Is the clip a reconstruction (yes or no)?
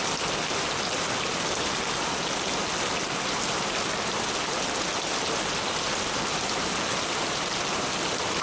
no